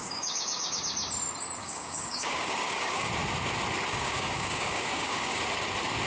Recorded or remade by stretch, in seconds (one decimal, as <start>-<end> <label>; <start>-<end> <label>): 0.0-0.8 remade; 0.8-1.6 recorded; 1.6-3.1 remade; 3.1-3.9 recorded; 3.9-5.4 remade; 5.4-6.1 recorded